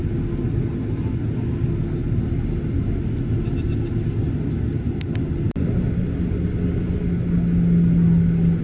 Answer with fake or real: real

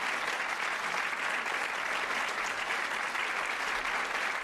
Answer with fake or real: real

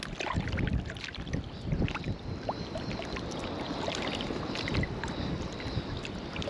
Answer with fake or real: real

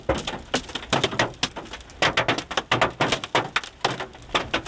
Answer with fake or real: real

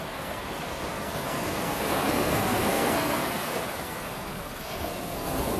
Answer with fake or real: fake